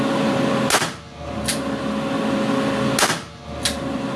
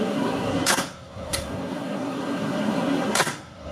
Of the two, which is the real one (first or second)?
first